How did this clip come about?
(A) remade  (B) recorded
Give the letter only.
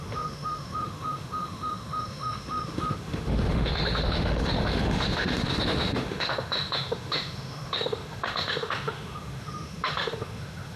A